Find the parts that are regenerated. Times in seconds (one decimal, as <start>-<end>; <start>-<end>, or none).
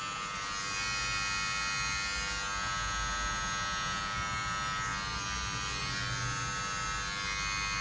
none